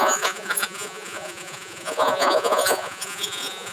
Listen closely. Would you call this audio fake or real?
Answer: fake